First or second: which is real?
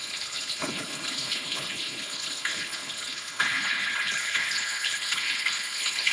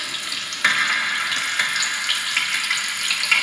second